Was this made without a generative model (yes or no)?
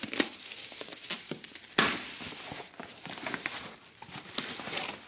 yes